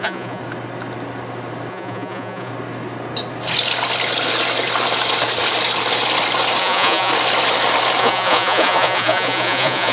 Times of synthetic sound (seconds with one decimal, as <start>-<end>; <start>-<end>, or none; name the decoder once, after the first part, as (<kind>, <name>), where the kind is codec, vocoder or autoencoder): 0.0-0.4 (vocoder, Vocos); 1.7-2.5; 6.6-7.1; 8.0-9.9

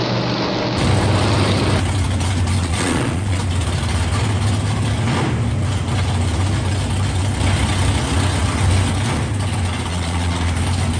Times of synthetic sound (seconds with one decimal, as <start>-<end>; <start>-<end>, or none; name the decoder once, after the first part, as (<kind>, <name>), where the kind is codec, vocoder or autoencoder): 2.6-3.4 (vocoder, Vocos); 9.9-10.5

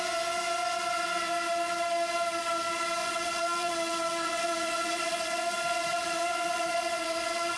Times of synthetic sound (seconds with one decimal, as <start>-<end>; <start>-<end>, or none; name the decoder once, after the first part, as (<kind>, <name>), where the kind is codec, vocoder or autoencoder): 3.0-7.6 (vocoder, Vocos)